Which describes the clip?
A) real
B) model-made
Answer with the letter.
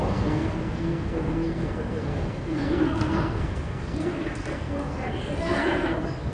B